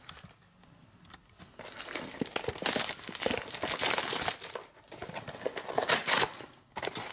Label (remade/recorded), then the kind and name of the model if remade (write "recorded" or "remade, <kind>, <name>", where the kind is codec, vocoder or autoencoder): recorded